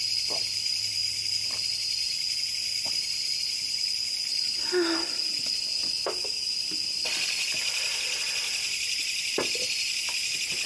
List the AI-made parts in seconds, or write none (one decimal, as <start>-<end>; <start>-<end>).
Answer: none